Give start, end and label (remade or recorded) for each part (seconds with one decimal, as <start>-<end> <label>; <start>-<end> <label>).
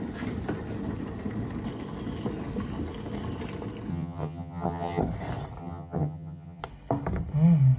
0.0-3.9 recorded; 3.9-5.0 remade; 5.0-5.6 recorded; 5.6-6.6 remade; 6.6-7.8 recorded